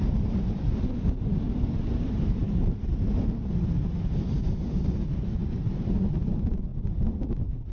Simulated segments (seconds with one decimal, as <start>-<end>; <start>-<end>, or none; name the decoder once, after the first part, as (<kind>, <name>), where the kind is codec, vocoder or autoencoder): none